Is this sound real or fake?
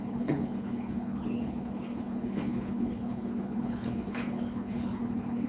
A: fake